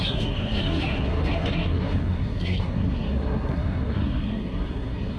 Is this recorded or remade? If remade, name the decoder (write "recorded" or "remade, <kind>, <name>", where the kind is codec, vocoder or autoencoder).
remade, codec, SNAC